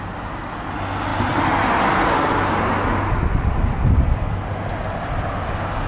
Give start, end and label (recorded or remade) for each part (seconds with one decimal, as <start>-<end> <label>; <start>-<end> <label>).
0.0-5.9 recorded